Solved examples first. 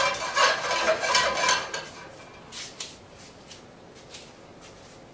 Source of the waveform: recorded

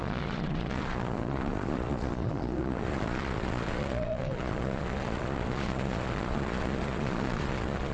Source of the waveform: remade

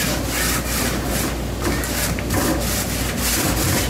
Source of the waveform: recorded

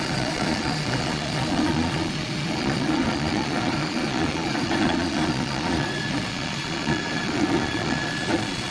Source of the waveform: remade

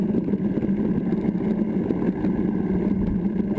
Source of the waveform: recorded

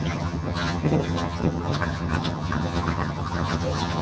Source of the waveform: remade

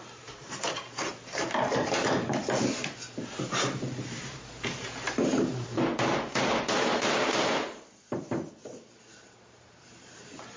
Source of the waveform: remade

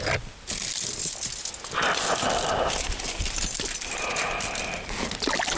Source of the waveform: recorded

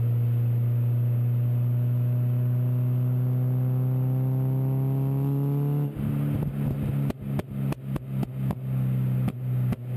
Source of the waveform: recorded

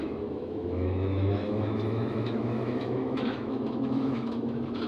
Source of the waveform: remade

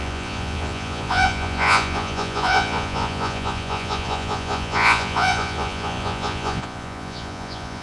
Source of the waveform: remade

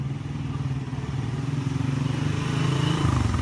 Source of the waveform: recorded